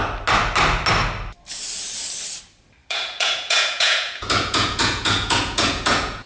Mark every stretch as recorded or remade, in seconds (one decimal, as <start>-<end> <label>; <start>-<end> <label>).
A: 0.0-2.8 recorded; 2.8-6.3 remade